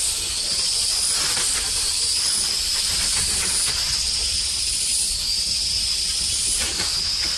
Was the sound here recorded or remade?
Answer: recorded